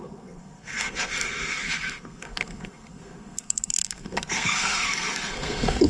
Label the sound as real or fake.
fake